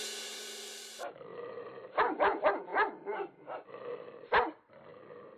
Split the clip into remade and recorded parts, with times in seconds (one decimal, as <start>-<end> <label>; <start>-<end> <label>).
0.0-5.4 recorded